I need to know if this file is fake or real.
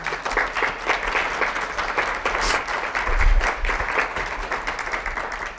real